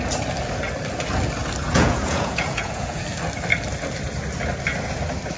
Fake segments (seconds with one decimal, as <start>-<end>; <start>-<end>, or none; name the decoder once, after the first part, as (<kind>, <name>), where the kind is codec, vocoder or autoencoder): 1.6-3.0 (vocoder, Vocos)